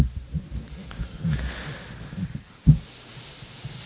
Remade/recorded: recorded